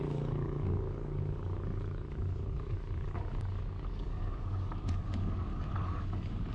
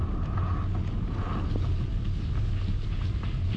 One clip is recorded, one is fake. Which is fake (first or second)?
first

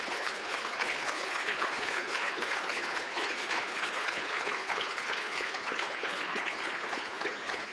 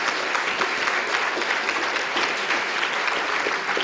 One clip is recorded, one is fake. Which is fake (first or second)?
first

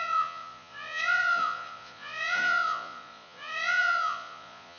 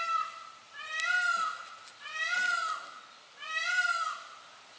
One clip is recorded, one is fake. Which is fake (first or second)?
first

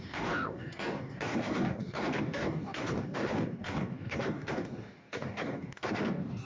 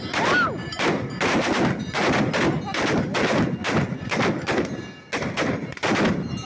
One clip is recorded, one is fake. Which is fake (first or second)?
first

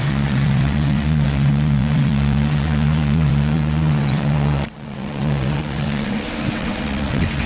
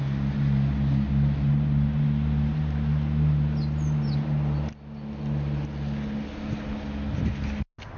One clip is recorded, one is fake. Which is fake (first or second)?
first